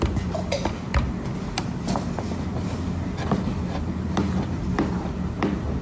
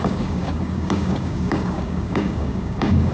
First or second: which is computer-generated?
second